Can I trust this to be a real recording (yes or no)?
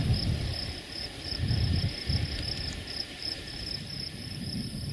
no